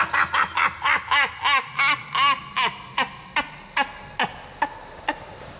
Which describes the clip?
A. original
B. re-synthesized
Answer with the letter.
A